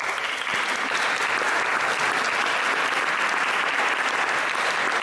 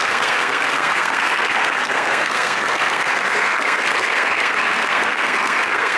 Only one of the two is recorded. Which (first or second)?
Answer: first